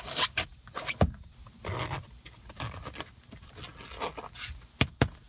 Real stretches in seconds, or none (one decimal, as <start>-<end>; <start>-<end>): 0.0-5.3